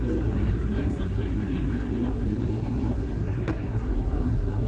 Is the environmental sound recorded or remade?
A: remade